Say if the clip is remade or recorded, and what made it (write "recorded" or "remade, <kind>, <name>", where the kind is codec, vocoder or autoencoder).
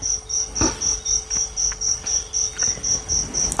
recorded